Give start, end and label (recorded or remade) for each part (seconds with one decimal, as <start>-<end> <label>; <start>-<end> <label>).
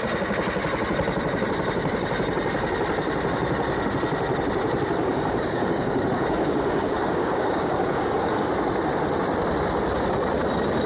0.0-5.0 recorded; 5.0-8.5 remade; 8.5-10.9 recorded